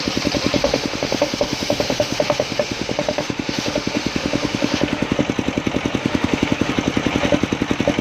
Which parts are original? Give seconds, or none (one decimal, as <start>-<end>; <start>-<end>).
0.0-0.6; 5.2-6.0; 6.7-8.0